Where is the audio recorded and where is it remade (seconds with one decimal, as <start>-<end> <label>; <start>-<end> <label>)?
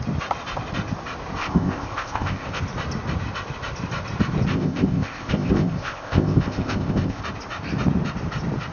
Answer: 0.0-1.4 recorded; 1.4-2.6 remade; 2.6-4.5 recorded; 4.5-7.2 remade; 7.2-8.7 recorded